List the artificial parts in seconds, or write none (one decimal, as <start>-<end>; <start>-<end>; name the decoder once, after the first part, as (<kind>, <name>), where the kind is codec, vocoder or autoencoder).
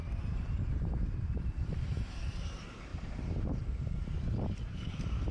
0.6-2.9 (vocoder, BigVGAN v2); 3.5-5.3